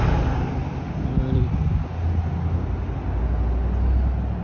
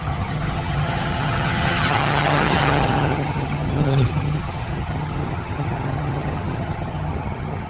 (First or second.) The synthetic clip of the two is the second